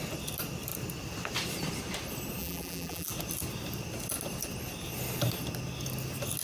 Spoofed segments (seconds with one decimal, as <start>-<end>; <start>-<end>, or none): 2.4-3.1